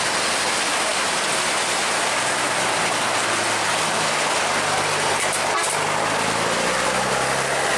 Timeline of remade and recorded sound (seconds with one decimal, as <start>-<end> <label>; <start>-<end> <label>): 0.0-7.8 recorded